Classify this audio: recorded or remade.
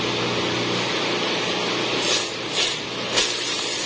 recorded